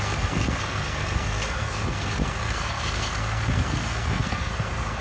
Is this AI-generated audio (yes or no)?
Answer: yes